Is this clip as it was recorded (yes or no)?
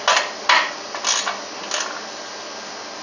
yes